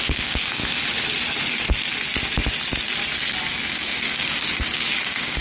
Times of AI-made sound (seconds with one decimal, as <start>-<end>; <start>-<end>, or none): 0.0-0.6; 3.7-5.4